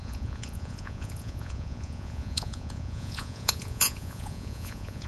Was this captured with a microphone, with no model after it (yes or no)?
no